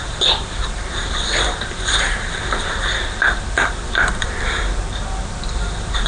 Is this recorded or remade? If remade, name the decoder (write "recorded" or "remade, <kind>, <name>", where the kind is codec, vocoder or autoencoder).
remade, vocoder, BigVGAN v2